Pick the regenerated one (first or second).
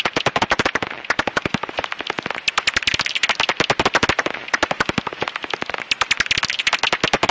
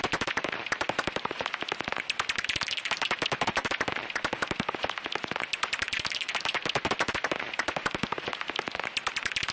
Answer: second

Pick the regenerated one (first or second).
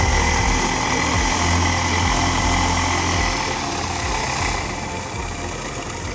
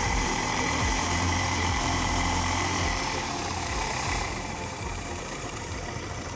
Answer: second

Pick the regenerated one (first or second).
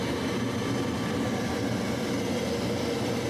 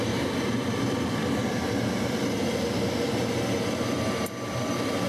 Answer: second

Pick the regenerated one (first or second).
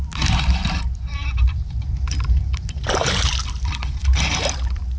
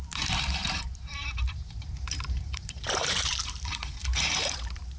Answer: second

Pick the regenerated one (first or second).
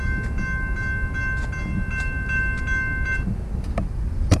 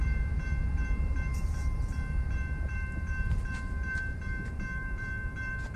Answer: second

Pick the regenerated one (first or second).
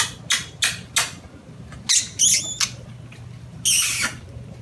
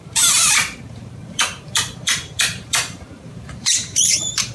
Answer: second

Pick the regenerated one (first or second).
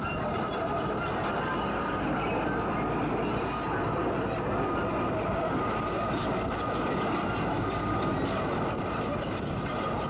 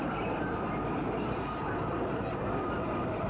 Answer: second